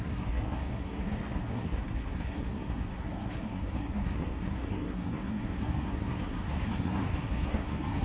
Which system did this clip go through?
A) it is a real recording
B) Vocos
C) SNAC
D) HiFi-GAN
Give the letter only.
C